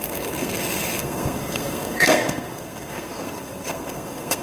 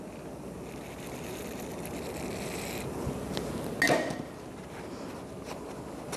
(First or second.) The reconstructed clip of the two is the first